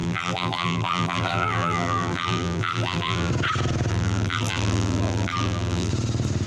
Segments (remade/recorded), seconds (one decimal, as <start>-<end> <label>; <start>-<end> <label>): 0.0-3.3 remade; 3.3-3.9 recorded; 3.9-5.9 remade; 5.9-6.5 recorded